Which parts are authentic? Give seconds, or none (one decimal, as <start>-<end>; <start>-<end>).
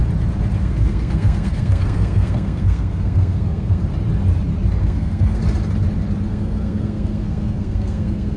0.0-0.6; 3.8-4.8; 5.4-6.3